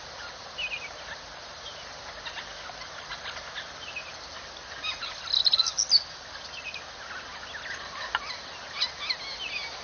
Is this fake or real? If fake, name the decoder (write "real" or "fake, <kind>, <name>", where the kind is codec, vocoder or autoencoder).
real